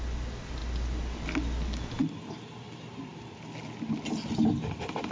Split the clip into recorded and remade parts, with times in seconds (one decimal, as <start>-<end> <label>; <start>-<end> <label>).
0.0-5.1 recorded